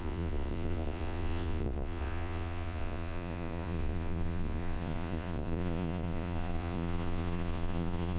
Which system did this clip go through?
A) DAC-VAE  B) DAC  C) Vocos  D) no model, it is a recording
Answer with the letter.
C